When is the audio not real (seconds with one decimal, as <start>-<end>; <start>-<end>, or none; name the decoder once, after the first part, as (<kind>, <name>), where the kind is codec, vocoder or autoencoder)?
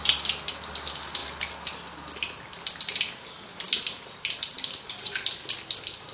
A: none